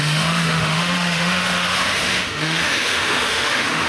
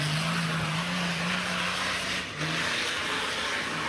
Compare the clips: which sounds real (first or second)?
second